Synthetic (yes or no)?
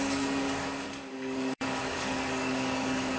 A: yes